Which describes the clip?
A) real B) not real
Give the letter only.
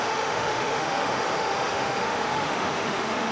B